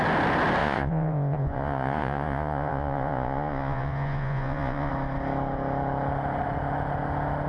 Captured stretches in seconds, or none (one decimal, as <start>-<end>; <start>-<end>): 0.0-0.6; 4.9-7.5